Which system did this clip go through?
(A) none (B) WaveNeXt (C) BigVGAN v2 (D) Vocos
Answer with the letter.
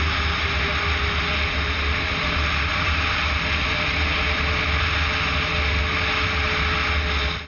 A